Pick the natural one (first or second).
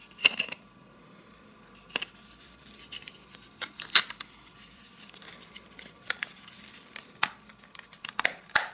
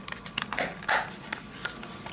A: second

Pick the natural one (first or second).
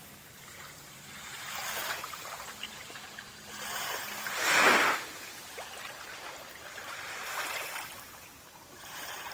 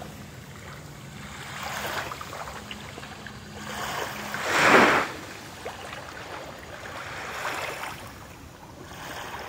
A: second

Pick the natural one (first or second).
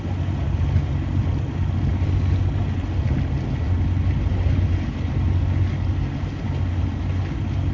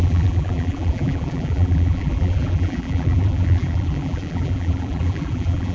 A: first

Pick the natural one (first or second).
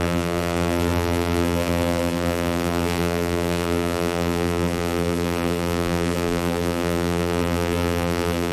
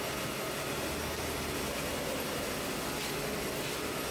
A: second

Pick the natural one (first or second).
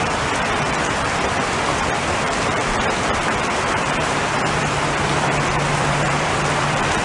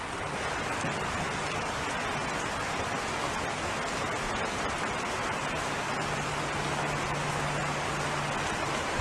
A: second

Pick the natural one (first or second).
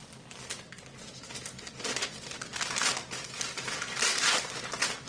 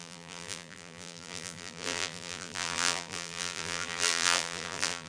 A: first